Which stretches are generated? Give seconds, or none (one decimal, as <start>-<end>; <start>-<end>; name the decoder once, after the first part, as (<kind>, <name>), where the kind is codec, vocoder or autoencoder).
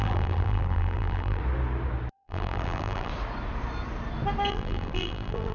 0.0-1.4 (vocoder, BigVGAN v2); 2.1-3.1; 4.5-5.5